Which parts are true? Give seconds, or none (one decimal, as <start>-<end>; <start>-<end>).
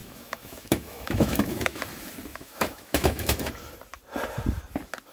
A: 1.8-2.3; 3.5-5.1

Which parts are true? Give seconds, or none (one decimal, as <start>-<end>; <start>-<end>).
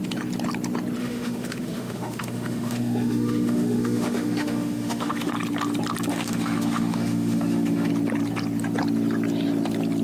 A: 0.0-1.0; 5.3-6.1; 7.9-10.0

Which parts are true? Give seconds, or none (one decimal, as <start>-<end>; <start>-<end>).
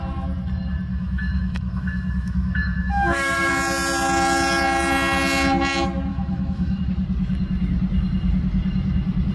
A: 0.0-0.9; 3.5-6.1; 6.8-9.3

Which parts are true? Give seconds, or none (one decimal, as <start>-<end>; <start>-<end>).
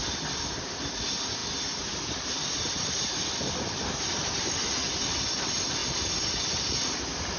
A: 0.0-7.4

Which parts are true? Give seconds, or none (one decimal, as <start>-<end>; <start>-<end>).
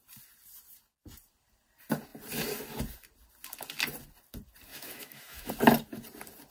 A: 0.0-4.7; 5.5-6.5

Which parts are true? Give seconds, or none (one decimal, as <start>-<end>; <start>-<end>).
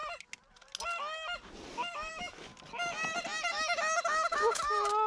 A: 0.0-2.1; 2.5-3.5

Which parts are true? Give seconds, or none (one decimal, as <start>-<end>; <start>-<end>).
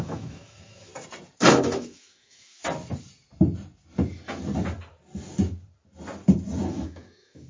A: 0.9-1.5; 2.6-6.7